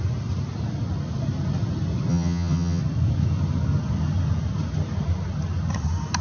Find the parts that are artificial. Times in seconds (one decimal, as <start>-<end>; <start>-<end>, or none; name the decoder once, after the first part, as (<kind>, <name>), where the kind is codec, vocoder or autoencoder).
2.1-2.8 (vocoder, HiFi-GAN)